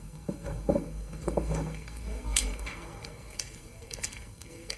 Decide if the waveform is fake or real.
fake